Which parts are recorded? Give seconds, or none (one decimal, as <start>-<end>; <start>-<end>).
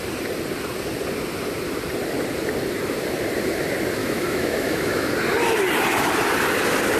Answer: 0.0-4.0; 5.1-7.0